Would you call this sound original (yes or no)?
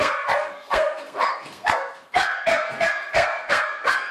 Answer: no